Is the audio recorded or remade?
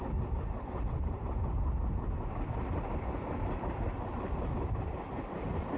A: recorded